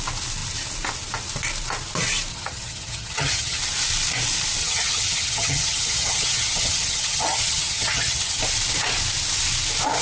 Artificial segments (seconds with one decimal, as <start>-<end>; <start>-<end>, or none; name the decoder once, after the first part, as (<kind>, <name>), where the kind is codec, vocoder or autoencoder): 2.3-3.6 (vocoder, HiFi-GAN); 4.6-8.4